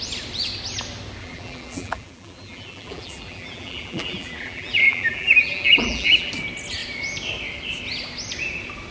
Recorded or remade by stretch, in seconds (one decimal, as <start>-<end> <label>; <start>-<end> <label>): 0.0-1.2 recorded; 1.2-6.3 remade; 6.3-8.9 recorded